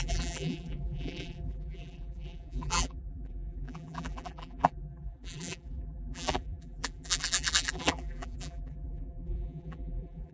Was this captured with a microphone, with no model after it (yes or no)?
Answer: no